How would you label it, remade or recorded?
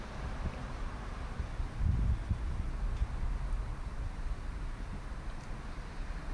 recorded